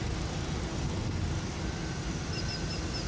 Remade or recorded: recorded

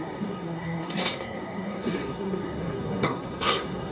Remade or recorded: remade